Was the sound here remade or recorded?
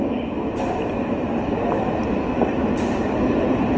recorded